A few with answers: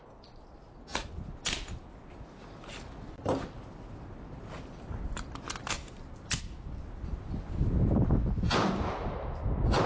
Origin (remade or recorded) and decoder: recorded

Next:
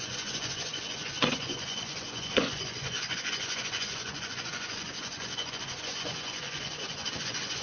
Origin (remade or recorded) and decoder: remade, vocoder, Vocos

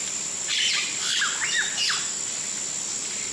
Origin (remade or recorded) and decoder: recorded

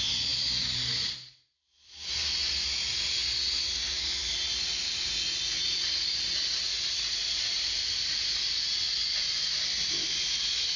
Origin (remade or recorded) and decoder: recorded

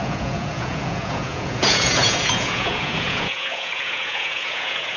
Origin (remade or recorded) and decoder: remade, vocoder, Vocos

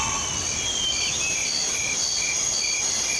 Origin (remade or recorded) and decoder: recorded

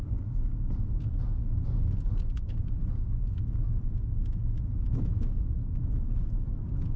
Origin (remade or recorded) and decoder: remade, vocoder, Vocos